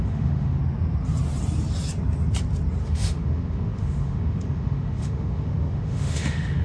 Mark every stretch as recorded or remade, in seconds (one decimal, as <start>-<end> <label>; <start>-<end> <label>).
0.0-0.6 remade; 0.6-2.8 recorded; 2.8-6.6 remade